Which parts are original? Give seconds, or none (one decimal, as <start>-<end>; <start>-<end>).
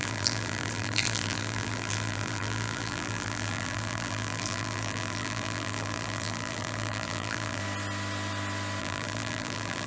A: 7.6-8.8